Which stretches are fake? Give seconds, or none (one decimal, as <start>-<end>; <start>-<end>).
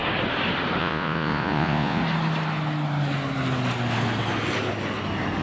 0.8-2.0